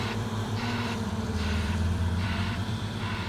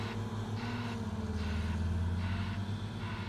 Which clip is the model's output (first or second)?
first